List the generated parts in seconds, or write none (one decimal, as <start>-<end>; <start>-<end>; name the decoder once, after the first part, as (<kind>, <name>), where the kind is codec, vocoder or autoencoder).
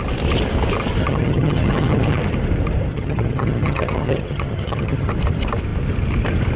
1.0-2.2 (vocoder, HiFi-GAN); 2.9-5.1